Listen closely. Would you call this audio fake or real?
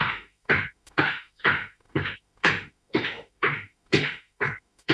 fake